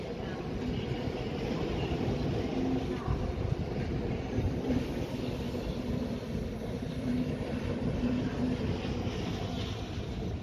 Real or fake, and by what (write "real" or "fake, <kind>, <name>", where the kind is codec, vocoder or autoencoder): real